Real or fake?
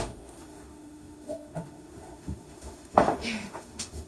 fake